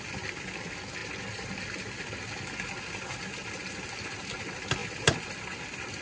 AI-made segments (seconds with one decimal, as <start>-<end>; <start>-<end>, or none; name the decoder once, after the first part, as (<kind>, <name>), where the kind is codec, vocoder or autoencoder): none